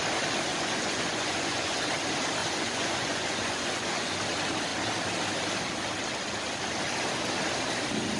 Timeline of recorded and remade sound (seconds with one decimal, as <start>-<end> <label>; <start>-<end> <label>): 0.0-0.5 recorded; 0.5-1.8 remade; 1.8-2.4 recorded; 2.4-4.2 remade; 4.2-8.2 recorded